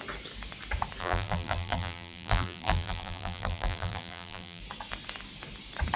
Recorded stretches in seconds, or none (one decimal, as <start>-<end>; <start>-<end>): 0.0-1.0; 4.6-6.0